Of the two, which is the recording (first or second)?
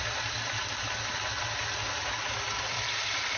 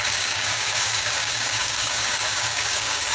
first